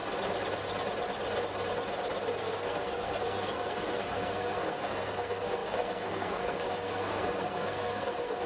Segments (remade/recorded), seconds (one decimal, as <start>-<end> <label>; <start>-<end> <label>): 0.0-2.4 recorded; 2.4-8.5 remade